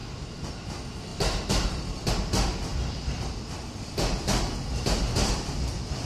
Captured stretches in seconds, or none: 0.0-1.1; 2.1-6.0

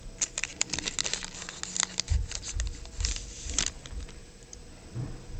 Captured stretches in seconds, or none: 0.0-4.2; 4.7-5.4

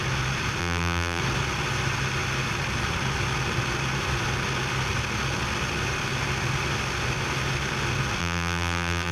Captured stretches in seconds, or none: 0.0-0.6; 1.2-8.2

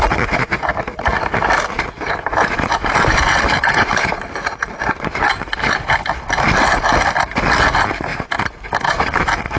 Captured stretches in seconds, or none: 0.0-0.7; 5.7-8.1; 9.2-9.6